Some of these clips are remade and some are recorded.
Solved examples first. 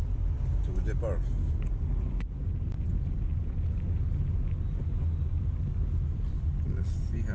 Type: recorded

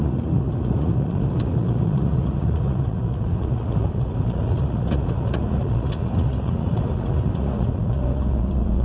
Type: remade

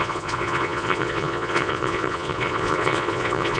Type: remade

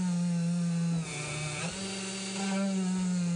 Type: recorded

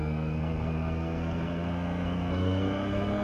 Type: remade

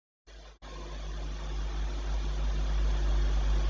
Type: recorded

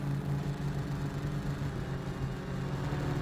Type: recorded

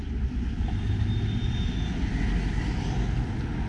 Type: recorded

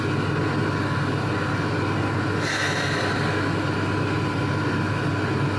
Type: recorded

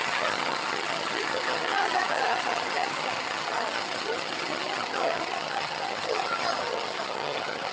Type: remade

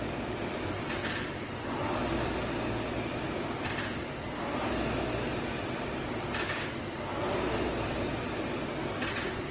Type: recorded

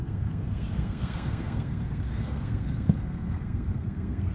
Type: remade